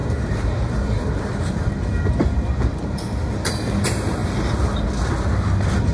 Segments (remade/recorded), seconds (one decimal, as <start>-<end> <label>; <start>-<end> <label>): 0.0-1.7 remade; 1.7-2.2 recorded; 2.2-3.0 remade; 3.0-5.9 recorded

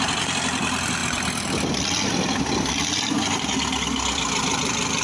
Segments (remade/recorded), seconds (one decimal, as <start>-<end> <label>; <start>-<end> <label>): 0.0-5.0 remade

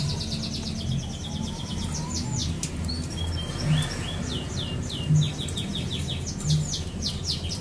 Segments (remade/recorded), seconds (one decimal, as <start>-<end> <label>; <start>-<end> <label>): 0.0-2.4 recorded; 2.4-2.9 remade; 2.9-7.6 recorded

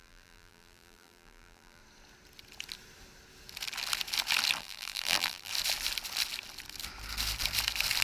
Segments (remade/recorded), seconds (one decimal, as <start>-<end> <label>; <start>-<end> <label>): 0.0-1.8 remade; 1.8-4.6 recorded; 4.6-5.5 remade; 5.5-8.0 recorded